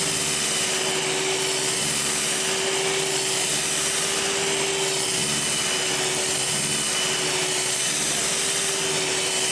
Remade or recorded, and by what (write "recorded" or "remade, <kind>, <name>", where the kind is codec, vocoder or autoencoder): recorded